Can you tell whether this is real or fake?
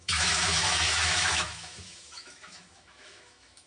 fake